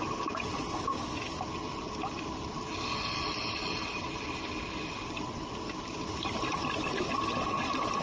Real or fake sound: real